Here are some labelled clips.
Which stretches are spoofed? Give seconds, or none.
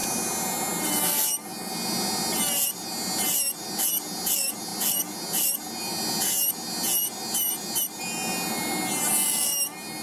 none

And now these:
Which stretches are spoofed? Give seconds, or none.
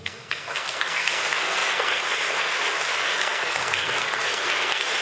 0.0-5.0 (codec, SNAC)